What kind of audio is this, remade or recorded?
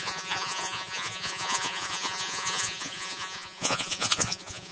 remade